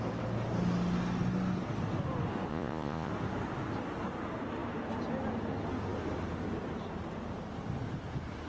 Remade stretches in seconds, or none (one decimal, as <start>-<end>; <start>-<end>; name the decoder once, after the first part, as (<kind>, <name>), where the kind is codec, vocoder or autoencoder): 2.5-3.1 (vocoder, Vocos)